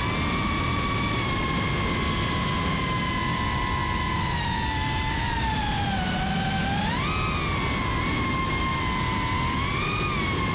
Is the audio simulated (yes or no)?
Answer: no